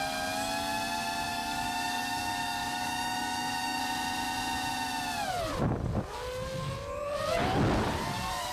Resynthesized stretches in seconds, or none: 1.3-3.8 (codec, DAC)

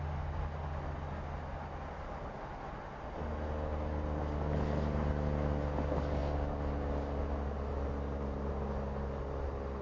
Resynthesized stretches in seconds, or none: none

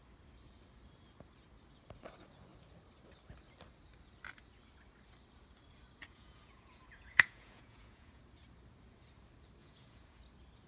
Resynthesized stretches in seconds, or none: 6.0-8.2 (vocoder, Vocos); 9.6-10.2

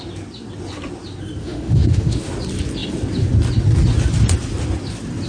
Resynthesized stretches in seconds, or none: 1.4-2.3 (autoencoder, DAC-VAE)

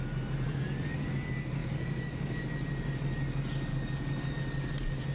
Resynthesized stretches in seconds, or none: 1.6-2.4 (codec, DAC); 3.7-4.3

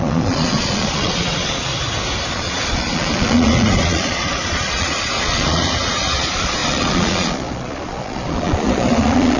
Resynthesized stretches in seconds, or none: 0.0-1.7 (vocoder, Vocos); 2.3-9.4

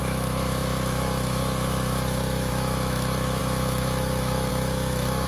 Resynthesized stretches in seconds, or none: 0.0-5.3 (autoencoder, DAC-VAE)